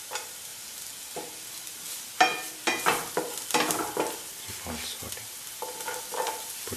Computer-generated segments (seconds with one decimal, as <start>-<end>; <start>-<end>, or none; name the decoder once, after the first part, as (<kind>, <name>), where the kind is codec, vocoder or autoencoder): none